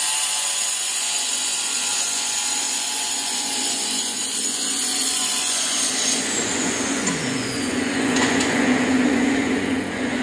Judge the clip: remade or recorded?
remade